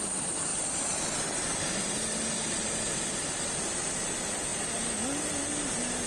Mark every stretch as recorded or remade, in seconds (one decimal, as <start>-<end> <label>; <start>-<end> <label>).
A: 0.0-6.1 recorded